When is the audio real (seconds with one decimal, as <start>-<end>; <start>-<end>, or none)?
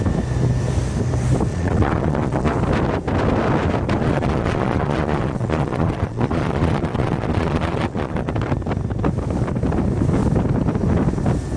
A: 0.0-1.5; 2.5-4.0; 8.3-11.6